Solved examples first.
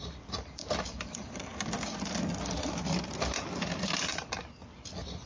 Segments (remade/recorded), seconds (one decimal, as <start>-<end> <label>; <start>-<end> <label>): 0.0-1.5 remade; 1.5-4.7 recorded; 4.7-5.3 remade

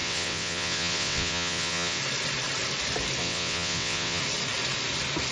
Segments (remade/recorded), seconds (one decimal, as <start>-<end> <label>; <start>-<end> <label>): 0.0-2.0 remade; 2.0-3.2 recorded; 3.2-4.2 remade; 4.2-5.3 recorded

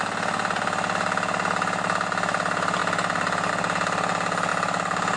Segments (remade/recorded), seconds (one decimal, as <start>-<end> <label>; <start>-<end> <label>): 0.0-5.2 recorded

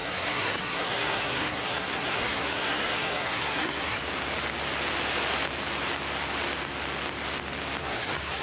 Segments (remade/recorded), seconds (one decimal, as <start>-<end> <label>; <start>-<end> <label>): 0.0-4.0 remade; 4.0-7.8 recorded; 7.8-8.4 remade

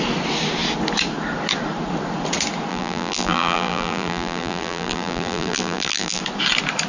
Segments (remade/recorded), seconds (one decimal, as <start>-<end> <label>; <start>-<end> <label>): 0.0-2.7 recorded; 2.7-6.2 remade; 6.2-6.9 recorded

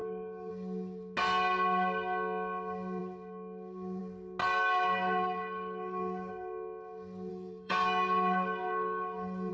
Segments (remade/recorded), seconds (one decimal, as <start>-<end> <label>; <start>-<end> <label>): 0.0-0.5 remade; 0.5-4.4 recorded; 4.4-6.3 remade; 6.3-7.3 recorded; 7.3-9.5 remade

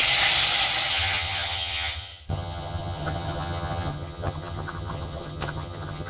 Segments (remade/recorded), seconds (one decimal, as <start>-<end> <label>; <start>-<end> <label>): 0.0-0.9 recorded; 0.9-6.1 remade

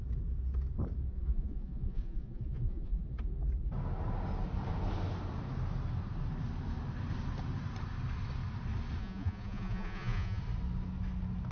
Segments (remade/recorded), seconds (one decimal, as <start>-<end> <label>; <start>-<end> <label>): 0.0-1.1 recorded; 1.1-3.0 remade; 3.0-9.0 recorded; 9.0-10.4 remade; 10.4-11.5 recorded